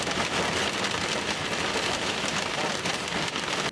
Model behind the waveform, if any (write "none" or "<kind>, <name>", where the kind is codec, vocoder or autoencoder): none